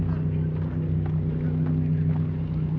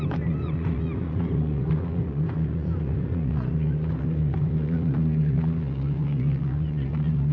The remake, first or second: second